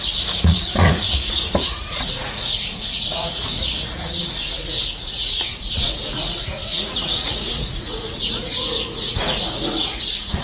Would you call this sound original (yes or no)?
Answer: no